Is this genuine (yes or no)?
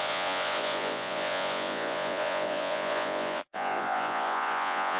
no